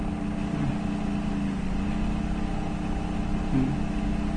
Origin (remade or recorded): recorded